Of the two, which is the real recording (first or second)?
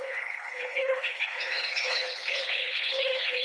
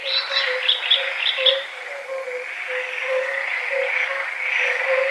second